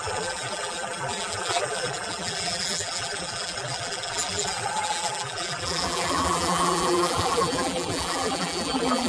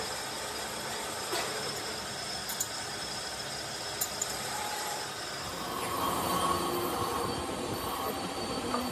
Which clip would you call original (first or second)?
second